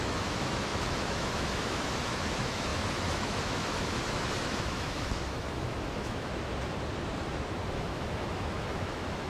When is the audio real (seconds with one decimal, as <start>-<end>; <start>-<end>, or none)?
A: 6.3-7.7